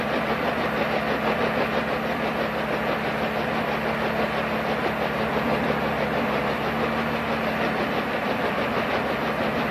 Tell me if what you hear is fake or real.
real